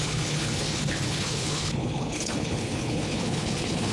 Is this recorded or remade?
remade